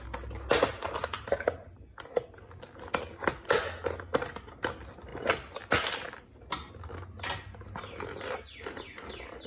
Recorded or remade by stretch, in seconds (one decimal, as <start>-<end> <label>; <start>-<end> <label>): 0.0-9.5 recorded